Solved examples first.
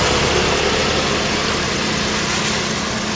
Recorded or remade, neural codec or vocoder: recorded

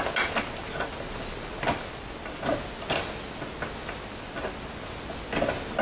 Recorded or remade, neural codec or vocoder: recorded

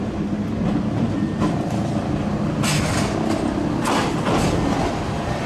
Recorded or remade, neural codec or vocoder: recorded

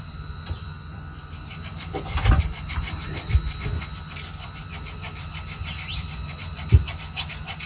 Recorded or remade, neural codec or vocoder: remade, vocoder, BigVGAN v2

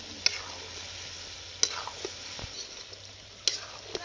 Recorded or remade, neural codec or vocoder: recorded